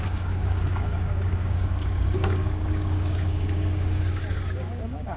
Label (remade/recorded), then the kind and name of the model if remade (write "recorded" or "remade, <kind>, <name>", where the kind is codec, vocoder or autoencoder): remade, codec, DAC